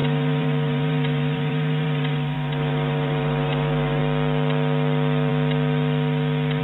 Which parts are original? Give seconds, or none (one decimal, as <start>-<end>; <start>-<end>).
4.0-6.6